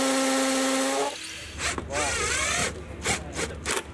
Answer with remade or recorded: recorded